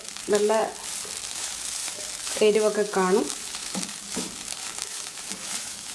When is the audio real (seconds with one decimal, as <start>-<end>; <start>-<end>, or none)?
0.6-1.3